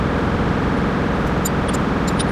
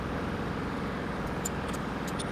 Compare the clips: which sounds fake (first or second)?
second